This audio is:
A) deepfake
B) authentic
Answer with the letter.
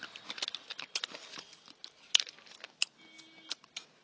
B